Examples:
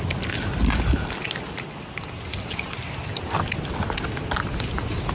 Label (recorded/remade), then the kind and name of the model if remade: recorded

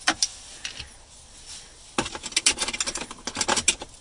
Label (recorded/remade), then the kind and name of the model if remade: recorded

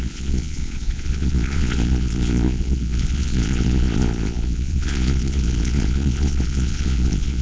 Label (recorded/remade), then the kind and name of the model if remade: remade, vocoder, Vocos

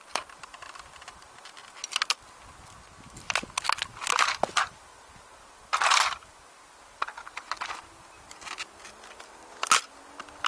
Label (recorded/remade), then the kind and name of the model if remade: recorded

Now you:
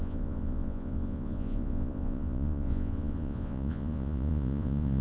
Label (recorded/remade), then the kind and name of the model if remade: remade, vocoder, Vocos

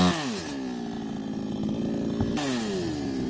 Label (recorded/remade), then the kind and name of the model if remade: recorded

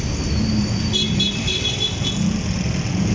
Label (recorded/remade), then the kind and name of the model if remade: recorded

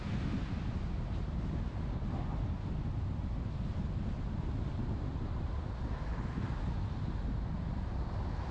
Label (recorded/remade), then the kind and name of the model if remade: recorded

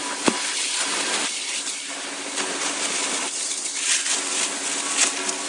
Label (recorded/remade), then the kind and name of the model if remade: recorded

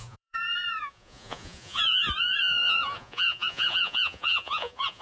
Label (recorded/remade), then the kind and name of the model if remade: remade, vocoder, Vocos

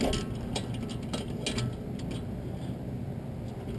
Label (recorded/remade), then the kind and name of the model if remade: recorded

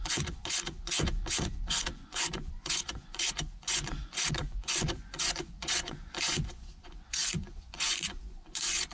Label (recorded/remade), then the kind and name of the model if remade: remade, vocoder, Vocos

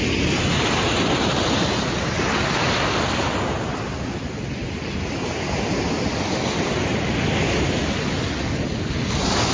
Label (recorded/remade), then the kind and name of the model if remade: recorded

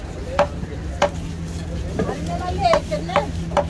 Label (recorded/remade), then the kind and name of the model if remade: recorded